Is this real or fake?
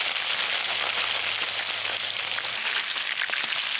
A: real